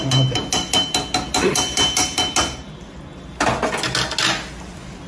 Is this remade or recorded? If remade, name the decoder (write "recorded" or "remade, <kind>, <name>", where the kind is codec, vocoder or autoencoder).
recorded